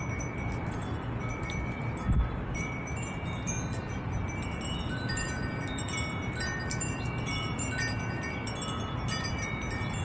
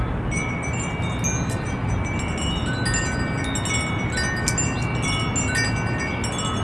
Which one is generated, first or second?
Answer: first